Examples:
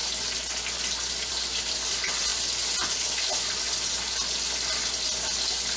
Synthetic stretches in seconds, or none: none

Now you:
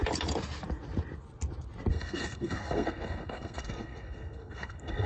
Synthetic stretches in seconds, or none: 1.9-5.1 (codec, SNAC)

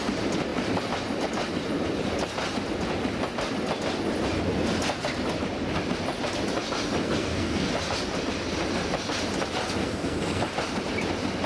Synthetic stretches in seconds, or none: 7.0-7.7 (codec, SNAC); 9.8-10.4

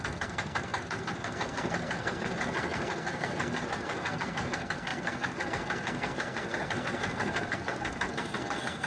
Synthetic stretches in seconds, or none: 0.0-8.9 (codec, SNAC)

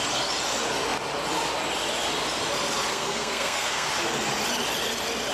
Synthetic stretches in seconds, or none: 2.9-3.9 (codec, SNAC)